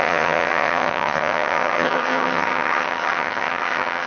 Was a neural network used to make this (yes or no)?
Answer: yes